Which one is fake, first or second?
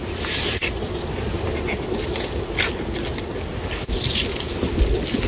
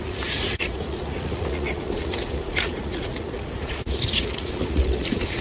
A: second